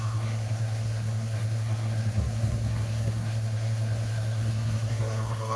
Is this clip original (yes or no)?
no